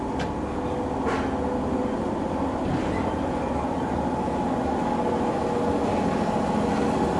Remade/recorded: recorded